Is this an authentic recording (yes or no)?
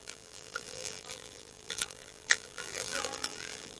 no